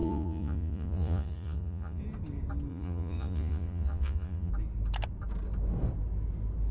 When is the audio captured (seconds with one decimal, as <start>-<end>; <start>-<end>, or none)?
2.0-2.7; 4.5-6.7